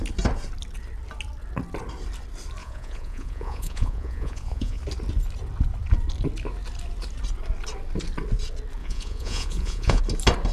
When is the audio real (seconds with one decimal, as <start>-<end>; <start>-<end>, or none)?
0.0-2.6; 4.8-8.8; 10.0-10.5